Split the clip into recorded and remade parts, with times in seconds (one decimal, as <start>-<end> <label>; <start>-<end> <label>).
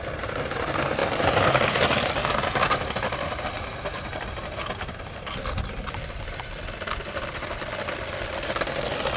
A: 0.0-3.9 recorded; 3.9-5.4 remade; 5.4-9.2 recorded